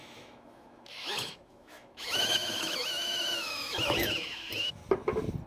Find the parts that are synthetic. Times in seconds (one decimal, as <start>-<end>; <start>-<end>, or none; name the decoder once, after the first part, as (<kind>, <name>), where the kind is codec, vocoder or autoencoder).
0.0-4.8 (autoencoder, DAC-VAE)